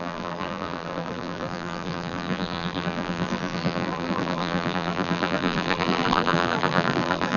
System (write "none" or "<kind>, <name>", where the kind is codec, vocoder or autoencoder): vocoder, BigVGAN v2